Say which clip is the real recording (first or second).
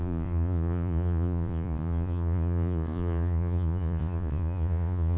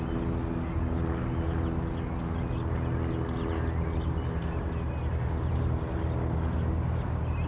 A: second